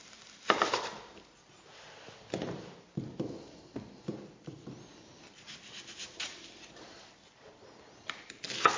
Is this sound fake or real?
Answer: real